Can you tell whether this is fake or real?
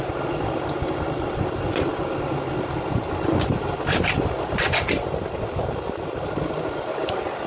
real